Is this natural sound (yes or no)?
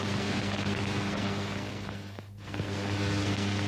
no